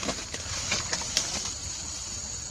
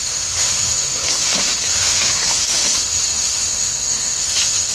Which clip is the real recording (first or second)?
first